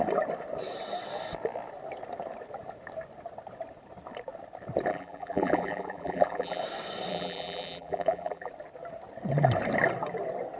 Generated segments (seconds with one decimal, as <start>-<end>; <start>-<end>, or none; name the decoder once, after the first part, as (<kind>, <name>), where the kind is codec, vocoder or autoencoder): 4.9-6.6 (vocoder, BigVGAN v2); 7.1-8.5